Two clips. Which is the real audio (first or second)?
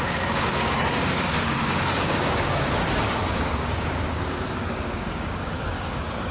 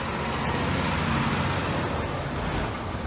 second